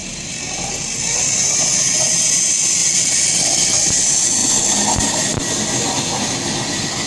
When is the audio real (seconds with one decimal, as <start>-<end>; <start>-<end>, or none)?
0.0-2.8; 3.9-4.4; 5.8-7.1